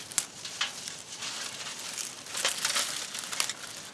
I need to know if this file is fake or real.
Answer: real